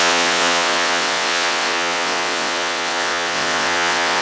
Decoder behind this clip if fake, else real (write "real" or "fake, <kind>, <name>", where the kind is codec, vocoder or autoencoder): fake, vocoder, WaveNeXt